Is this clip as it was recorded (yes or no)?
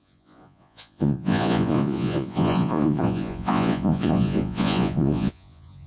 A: no